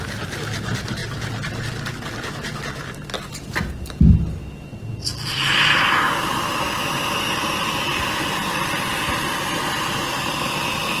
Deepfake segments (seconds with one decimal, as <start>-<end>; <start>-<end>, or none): none